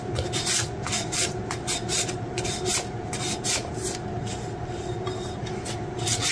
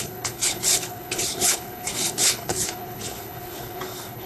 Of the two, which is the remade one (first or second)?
second